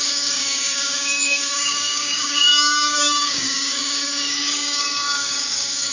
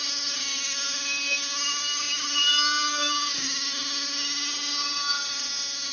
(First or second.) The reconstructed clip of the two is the first